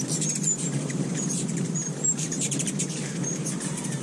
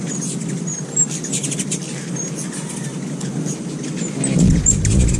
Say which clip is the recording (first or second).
second